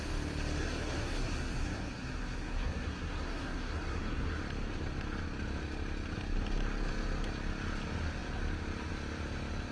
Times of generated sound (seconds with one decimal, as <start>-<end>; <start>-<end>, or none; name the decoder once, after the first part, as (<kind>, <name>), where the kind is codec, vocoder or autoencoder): 0.6-4.4 (codec, SNAC)